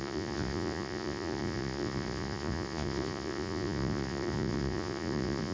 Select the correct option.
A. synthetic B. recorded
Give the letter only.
A